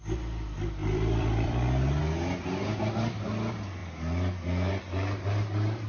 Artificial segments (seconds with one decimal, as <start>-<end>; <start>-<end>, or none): 0.8-2.0